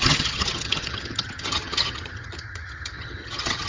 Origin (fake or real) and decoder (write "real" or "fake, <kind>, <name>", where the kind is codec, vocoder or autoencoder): fake, vocoder, HiFi-GAN